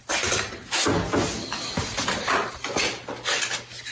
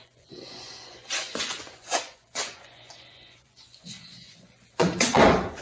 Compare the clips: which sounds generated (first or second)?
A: second